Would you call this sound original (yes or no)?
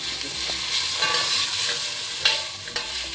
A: yes